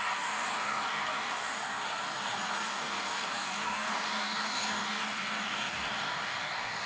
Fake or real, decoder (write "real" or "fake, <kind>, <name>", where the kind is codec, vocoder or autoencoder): fake, codec, DAC